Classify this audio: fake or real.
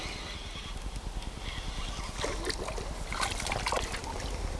real